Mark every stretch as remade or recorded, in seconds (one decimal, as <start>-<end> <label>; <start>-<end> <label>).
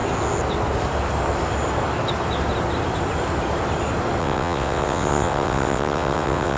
0.0-4.2 recorded; 4.2-6.6 remade